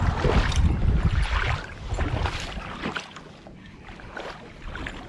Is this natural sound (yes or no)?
yes